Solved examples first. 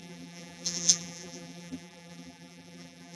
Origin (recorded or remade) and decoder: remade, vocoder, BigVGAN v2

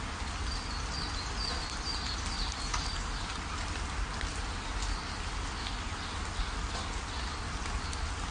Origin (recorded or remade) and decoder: recorded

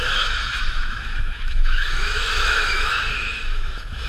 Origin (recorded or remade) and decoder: remade, autoencoder, DAC-VAE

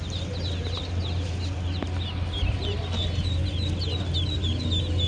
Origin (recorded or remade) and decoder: recorded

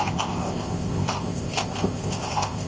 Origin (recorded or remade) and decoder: remade, codec, ZipCodec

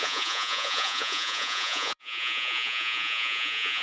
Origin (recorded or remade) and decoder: remade, vocoder, Vocos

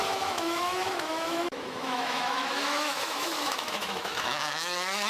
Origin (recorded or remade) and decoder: remade, autoencoder, DAC-VAE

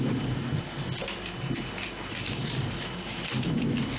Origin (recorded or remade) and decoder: recorded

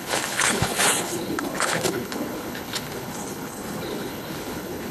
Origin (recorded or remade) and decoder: remade, codec, HILCodec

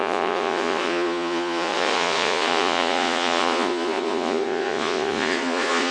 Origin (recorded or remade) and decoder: remade, vocoder, Vocos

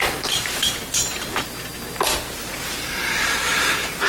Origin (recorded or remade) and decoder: remade, vocoder, BigVGAN v2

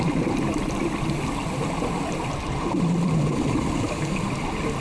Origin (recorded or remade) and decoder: recorded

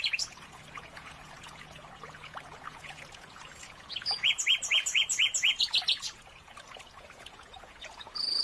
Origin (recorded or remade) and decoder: remade, vocoder, Vocos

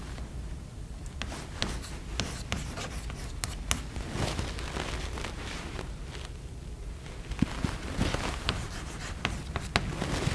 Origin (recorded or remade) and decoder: recorded